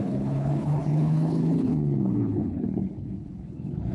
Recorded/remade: remade